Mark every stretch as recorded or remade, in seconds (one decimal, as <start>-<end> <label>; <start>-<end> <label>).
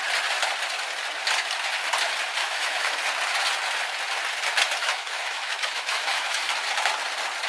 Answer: 0.0-2.4 recorded; 2.4-3.0 remade; 3.0-4.8 recorded; 4.8-6.4 remade; 6.4-7.5 recorded